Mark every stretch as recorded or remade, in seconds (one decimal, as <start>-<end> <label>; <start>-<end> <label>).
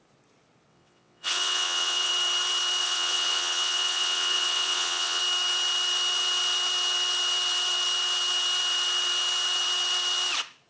0.0-0.7 recorded; 0.7-2.1 remade; 2.1-2.8 recorded; 2.8-5.2 remade; 5.2-10.7 recorded